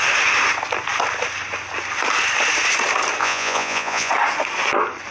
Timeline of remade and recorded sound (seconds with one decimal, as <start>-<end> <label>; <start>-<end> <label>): 0.0-3.2 recorded; 3.2-4.1 remade; 4.1-5.1 recorded